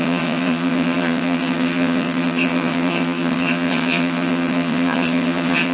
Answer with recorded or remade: remade